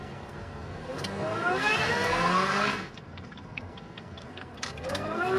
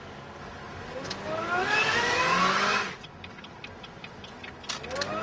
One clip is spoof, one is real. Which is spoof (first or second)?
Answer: first